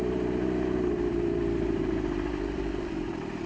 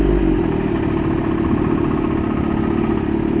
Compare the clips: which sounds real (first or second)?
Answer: second